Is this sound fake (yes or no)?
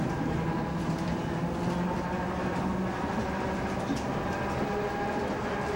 no